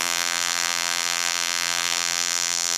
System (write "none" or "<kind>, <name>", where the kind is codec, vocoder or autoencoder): vocoder, BigVGAN v2